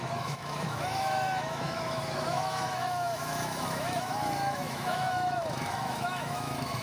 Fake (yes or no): yes